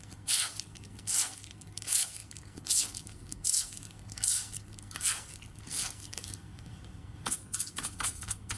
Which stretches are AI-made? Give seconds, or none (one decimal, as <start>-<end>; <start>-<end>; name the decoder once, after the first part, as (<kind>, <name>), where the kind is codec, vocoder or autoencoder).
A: 0.0-8.6 (codec, SNAC)